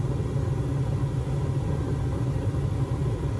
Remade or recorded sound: recorded